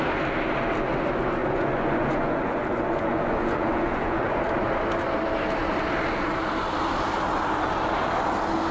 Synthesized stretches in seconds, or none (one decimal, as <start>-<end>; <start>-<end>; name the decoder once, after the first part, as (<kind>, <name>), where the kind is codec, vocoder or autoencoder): 1.4-4.4 (vocoder, Vocos)